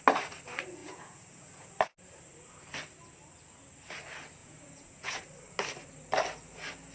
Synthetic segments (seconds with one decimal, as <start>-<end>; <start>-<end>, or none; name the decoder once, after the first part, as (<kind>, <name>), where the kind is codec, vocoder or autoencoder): 0.8-1.7 (vocoder, Vocos); 4.4-5.2